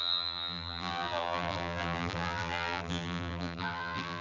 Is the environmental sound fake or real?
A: fake